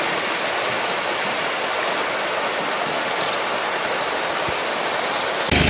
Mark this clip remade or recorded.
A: recorded